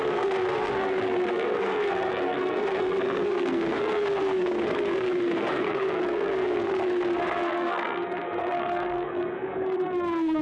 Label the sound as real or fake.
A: fake